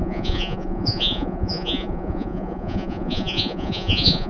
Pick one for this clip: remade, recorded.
remade